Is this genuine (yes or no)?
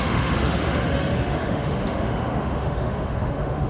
no